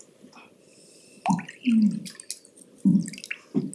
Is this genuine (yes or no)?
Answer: yes